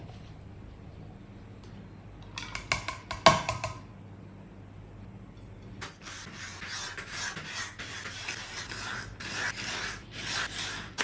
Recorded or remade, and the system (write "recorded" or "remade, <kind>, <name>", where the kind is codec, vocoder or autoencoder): recorded